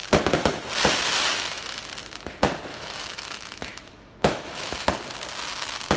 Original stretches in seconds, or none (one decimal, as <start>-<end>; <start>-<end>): 0.0-1.3; 1.8-2.7; 4.9-6.0

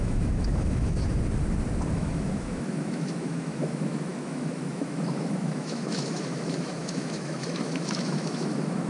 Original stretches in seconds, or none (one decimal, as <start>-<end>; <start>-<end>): 1.0-1.9

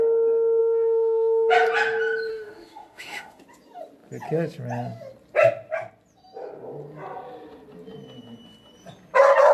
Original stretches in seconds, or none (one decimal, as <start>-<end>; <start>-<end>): 0.0-0.6; 1.5-2.3; 3.4-9.5